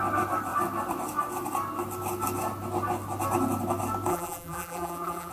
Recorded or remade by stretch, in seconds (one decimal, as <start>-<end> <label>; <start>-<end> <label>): 0.0-4.1 recorded; 4.1-5.3 remade